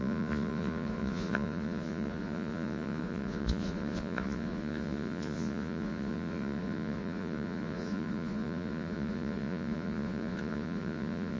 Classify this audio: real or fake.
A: fake